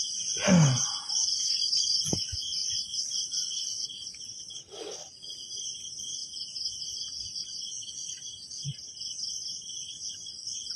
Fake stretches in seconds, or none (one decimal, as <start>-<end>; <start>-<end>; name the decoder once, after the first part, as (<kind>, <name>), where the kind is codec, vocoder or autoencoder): 2.6-4.5 (vocoder, BigVGAN v2)